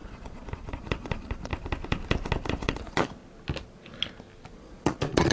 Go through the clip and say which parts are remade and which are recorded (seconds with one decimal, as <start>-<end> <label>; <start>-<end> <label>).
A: 0.0-1.5 remade; 1.5-2.5 recorded; 2.5-3.2 remade; 3.2-4.5 recorded; 4.5-5.3 remade